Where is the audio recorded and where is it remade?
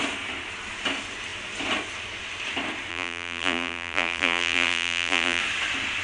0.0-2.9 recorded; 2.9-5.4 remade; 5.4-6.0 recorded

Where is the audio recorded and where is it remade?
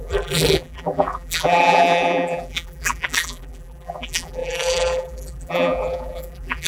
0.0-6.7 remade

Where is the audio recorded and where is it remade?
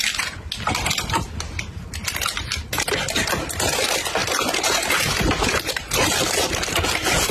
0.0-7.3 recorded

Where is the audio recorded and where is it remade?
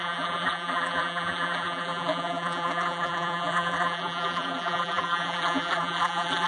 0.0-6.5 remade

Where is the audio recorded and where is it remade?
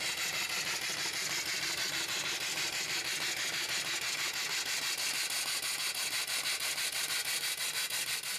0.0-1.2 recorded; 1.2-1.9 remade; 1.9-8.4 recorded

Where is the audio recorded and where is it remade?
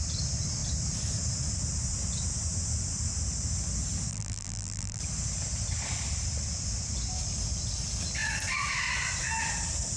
0.0-4.1 recorded; 4.1-5.0 remade; 5.0-10.0 recorded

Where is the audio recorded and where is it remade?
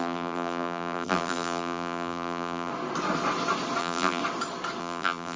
0.0-2.7 remade; 2.7-3.8 recorded; 3.8-4.2 remade; 4.2-4.8 recorded; 4.8-5.4 remade